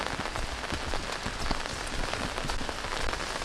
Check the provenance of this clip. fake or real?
real